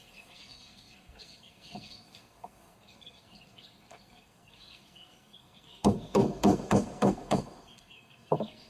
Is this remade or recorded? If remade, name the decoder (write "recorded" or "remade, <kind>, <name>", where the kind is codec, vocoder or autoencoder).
remade, codec, SNAC